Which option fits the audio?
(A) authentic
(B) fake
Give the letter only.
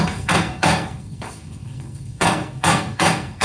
B